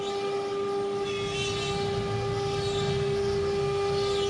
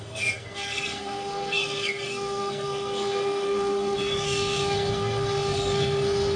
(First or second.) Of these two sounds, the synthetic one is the second